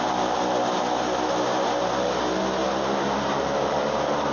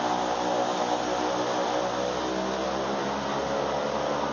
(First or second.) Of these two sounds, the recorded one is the second